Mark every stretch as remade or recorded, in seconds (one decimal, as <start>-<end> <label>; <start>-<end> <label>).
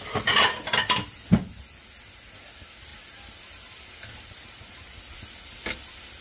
0.0-6.2 recorded